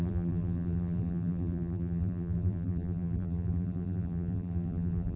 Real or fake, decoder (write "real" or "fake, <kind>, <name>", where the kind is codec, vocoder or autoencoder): fake, vocoder, BigVGAN v2